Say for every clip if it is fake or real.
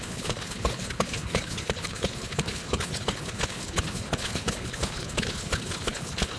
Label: fake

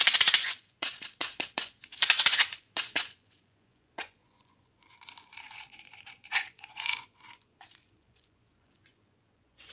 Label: fake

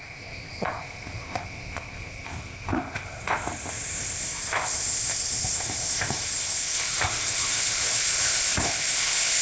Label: fake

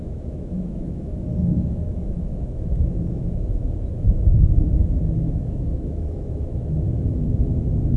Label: fake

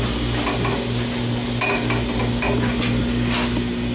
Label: real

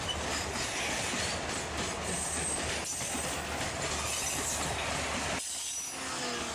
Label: real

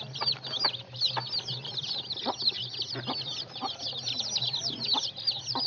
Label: real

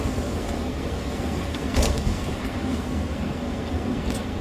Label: fake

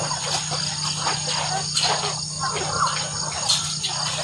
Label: real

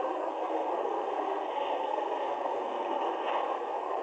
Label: fake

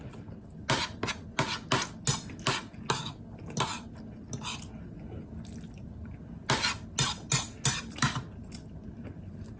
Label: real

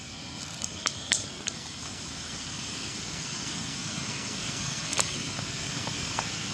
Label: fake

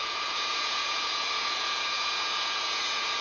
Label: fake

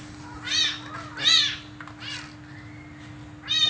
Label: real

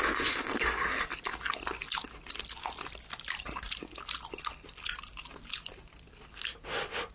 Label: real